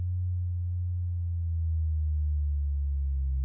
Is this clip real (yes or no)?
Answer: yes